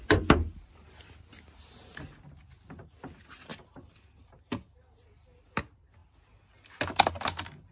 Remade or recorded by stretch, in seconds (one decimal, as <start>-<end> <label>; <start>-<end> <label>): 0.0-7.7 recorded

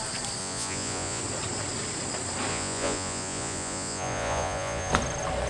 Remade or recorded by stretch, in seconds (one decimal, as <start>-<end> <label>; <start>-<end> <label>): 0.0-0.4 recorded; 0.4-1.2 remade; 1.2-2.5 recorded; 2.5-4.9 remade; 4.9-5.5 recorded

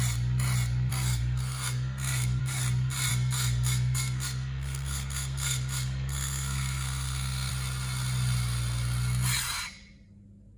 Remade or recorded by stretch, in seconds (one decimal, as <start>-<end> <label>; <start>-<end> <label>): 0.0-0.9 recorded; 0.9-2.4 remade; 2.4-3.1 recorded; 3.1-7.5 remade; 7.5-10.6 recorded

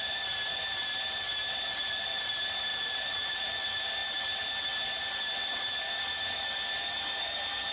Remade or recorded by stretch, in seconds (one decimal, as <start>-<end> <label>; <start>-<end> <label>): 0.0-1.7 recorded; 1.7-2.3 remade; 2.3-2.7 recorded; 2.7-3.6 remade; 3.6-7.7 recorded